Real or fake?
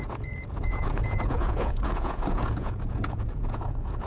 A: fake